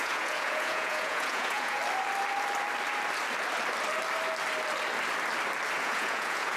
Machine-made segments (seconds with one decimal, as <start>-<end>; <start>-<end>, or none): 0.0-1.8; 5.8-6.6